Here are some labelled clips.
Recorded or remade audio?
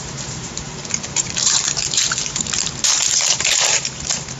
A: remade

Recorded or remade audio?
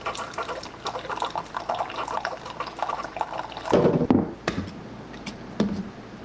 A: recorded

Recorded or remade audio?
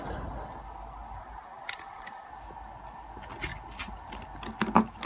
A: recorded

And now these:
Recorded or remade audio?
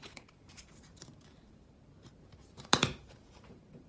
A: remade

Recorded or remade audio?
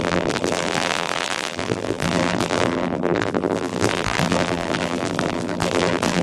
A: remade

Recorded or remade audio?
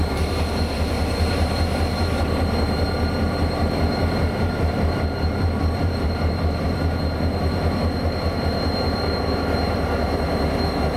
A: remade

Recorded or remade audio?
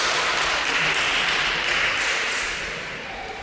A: recorded